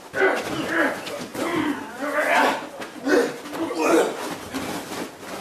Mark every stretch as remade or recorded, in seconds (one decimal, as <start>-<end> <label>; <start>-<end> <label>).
0.0-5.4 recorded